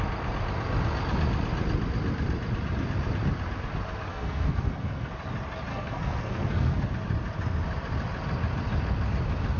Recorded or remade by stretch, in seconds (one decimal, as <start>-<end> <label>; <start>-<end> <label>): 0.0-4.1 recorded; 4.1-5.1 remade; 5.1-5.7 recorded; 5.7-6.9 remade; 6.9-9.6 recorded